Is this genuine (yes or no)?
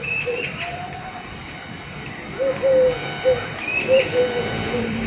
no